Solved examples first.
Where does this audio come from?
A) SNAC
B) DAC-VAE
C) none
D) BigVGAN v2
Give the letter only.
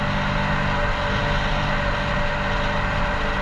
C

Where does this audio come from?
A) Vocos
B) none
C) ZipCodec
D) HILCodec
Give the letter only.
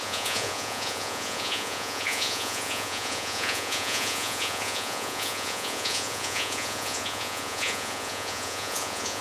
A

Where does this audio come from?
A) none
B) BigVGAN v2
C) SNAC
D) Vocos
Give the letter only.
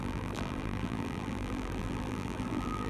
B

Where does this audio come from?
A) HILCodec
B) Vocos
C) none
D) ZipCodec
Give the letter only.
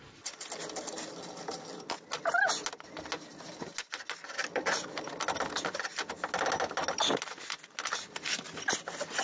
C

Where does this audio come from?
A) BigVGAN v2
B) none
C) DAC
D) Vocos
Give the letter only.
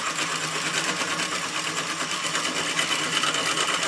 B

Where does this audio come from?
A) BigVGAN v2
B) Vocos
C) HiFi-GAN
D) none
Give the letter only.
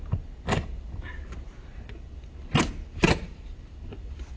D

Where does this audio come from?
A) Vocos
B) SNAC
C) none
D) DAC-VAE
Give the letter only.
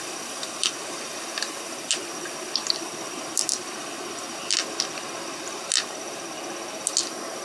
C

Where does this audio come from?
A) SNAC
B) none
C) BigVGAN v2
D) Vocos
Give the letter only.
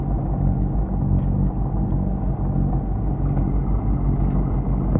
B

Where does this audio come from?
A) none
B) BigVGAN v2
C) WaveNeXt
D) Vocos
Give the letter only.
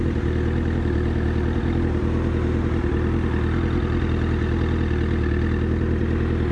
A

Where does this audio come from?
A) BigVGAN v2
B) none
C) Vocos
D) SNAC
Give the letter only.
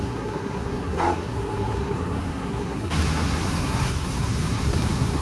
D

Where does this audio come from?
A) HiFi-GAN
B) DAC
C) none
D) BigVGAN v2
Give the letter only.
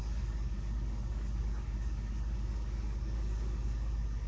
B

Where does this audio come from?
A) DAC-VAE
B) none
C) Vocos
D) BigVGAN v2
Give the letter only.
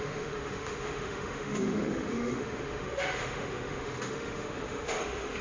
A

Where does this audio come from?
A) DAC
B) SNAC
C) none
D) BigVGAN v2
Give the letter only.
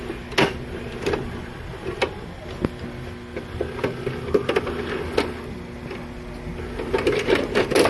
C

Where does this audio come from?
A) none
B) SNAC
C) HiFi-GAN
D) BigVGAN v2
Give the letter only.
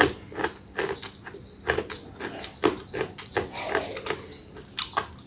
A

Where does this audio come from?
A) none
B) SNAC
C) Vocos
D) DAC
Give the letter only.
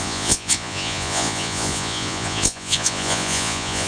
C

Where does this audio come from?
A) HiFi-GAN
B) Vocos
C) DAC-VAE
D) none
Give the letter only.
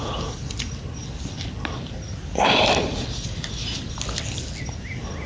D